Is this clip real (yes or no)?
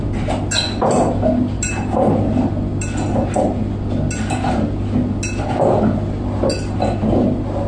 yes